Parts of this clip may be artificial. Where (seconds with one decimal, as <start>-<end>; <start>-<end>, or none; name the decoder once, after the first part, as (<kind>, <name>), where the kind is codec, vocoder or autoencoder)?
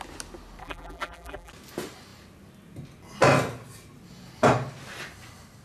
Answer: 0.6-1.5 (vocoder, BigVGAN v2)